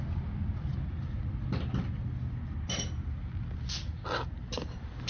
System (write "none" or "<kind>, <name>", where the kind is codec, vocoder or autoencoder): none